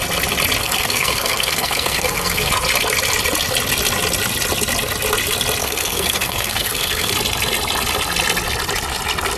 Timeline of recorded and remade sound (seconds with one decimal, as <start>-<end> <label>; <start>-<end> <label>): 0.0-0.6 recorded; 0.6-2.5 remade; 2.5-5.6 recorded; 5.6-7.1 remade; 7.1-9.4 recorded